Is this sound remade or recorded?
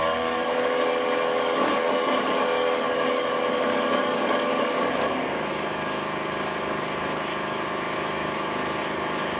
remade